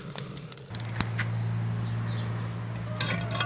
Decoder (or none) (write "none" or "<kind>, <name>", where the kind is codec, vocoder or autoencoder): none